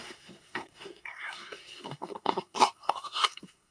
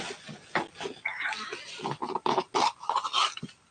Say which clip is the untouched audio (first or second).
second